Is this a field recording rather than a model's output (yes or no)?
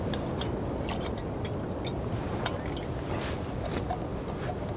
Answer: yes